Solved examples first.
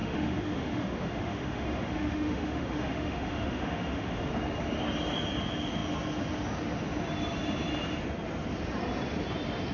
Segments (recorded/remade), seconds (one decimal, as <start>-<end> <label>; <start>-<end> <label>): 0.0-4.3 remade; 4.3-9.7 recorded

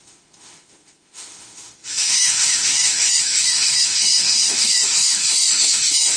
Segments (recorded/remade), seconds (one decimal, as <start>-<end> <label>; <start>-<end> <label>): 0.0-6.2 remade

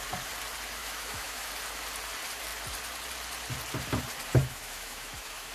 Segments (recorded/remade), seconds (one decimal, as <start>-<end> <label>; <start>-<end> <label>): 0.0-0.8 recorded; 0.8-1.5 remade; 1.5-4.4 recorded; 4.4-5.5 remade